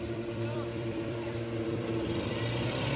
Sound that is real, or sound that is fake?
fake